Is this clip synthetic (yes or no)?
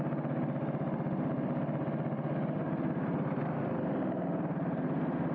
no